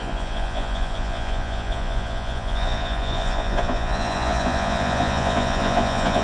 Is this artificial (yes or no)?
yes